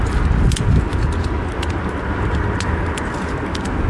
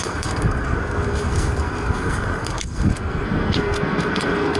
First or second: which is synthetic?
second